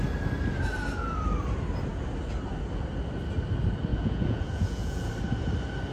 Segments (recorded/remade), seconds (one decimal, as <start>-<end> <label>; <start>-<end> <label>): 0.0-3.9 recorded; 3.9-5.1 remade; 5.1-5.9 recorded